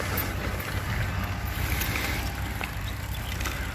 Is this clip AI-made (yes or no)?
no